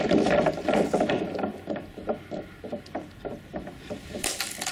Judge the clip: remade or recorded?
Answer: recorded